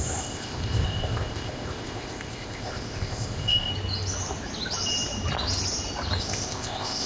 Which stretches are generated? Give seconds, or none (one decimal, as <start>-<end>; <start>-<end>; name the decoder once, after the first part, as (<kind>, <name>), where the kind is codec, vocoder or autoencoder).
0.0-3.7 (codec, ZipCodec); 6.2-7.1